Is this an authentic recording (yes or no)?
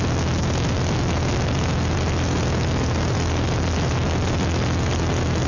yes